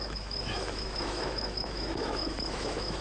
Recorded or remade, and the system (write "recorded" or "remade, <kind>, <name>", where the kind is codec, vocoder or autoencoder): remade, autoencoder, DAC-VAE